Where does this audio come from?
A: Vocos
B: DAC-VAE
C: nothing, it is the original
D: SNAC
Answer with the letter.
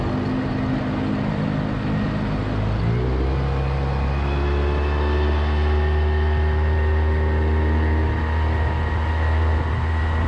C